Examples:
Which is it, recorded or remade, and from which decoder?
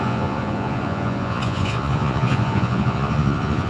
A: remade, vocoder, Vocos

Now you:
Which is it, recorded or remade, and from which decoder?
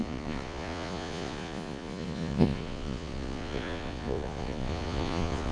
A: remade, vocoder, Vocos